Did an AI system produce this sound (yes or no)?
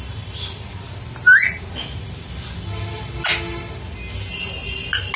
no